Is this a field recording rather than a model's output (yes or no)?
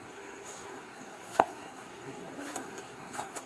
no